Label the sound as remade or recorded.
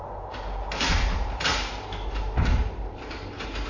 recorded